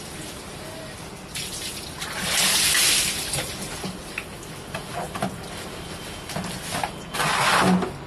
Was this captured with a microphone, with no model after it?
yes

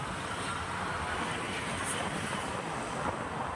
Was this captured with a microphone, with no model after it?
yes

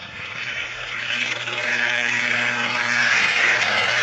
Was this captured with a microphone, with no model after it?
no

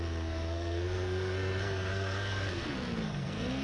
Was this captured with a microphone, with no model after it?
no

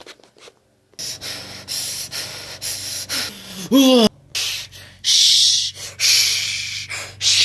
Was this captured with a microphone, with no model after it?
yes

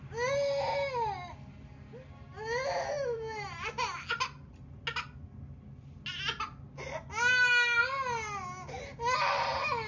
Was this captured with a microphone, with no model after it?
yes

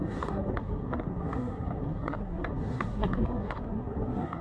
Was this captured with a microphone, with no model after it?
no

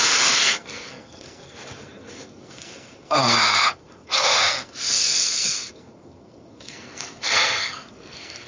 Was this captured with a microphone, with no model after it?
no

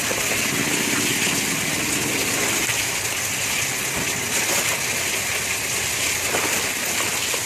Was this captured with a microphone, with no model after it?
yes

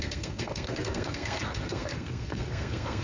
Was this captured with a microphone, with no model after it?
no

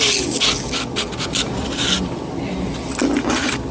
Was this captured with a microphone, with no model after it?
yes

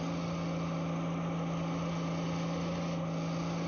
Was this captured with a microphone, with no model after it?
yes